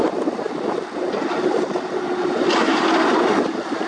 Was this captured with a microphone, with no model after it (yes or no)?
yes